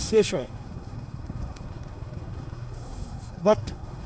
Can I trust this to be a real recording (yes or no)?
no